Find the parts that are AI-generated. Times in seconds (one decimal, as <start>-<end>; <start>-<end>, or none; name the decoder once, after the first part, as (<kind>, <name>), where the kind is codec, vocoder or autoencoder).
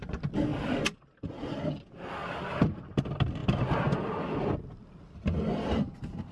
none